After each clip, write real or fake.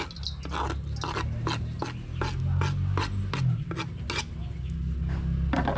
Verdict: real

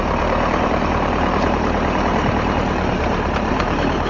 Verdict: fake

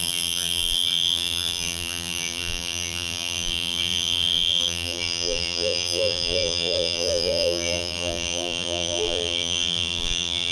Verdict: fake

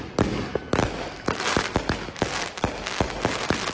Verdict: real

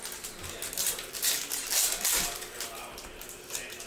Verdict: real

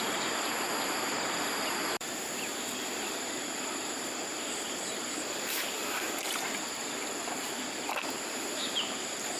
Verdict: fake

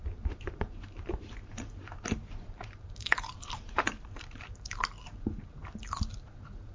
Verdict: fake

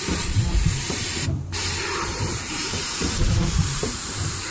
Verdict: fake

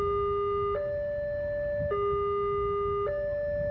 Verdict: real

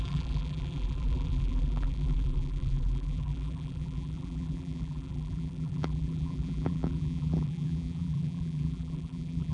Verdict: fake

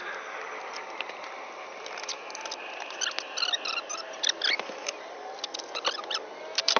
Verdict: real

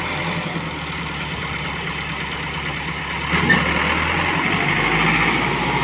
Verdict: real